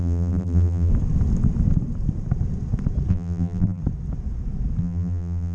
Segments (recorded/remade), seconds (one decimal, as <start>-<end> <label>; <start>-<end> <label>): 0.0-0.9 remade; 0.9-3.1 recorded; 3.1-3.8 remade; 3.8-4.8 recorded; 4.8-5.5 remade